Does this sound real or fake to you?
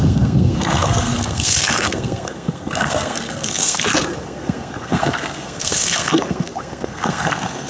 fake